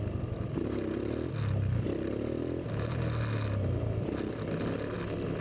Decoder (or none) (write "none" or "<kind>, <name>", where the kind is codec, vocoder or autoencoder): none